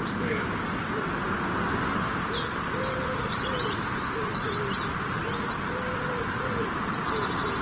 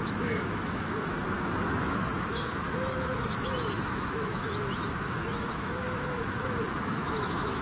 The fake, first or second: second